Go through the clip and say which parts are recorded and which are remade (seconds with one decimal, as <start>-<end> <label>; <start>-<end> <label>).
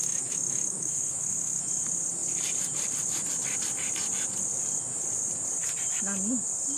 0.0-1.6 remade; 1.6-6.8 recorded